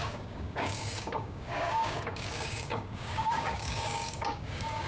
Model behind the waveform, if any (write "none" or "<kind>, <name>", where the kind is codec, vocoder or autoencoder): codec, DAC